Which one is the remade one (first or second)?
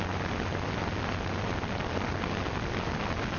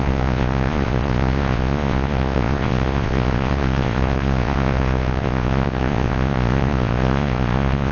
second